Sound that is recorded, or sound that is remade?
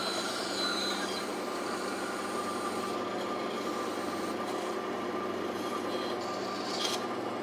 remade